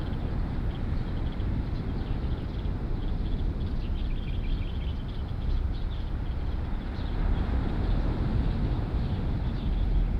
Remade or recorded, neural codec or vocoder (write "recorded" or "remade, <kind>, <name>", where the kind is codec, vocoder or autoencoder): recorded